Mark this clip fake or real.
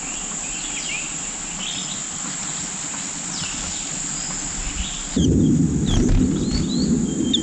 real